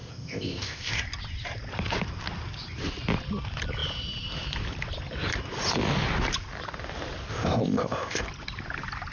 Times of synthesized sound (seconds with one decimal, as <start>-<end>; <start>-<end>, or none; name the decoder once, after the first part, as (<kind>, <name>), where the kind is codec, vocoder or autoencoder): 0.0-1.0 (codec, ZipCodec); 7.3-8.2